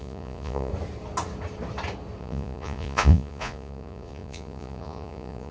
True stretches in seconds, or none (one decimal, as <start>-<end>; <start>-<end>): 0.7-2.2